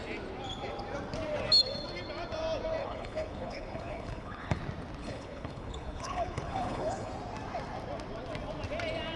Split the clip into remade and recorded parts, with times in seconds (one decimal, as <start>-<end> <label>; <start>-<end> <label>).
0.0-2.8 recorded; 2.8-4.6 remade; 4.6-5.0 recorded; 5.0-7.1 remade; 7.1-9.2 recorded